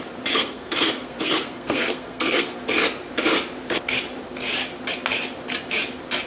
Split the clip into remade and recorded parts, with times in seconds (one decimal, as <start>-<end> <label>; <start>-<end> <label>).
0.0-0.4 recorded; 0.4-2.6 remade; 2.6-6.3 recorded